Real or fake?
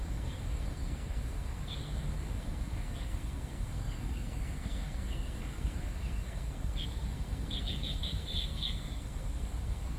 fake